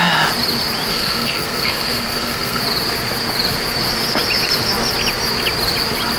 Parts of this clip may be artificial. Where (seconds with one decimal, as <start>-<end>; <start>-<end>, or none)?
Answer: 0.9-2.6